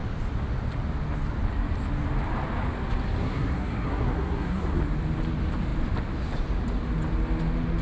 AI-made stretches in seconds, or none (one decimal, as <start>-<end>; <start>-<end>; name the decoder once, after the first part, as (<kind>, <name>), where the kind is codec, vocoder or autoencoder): 3.2-4.8 (codec, SNAC)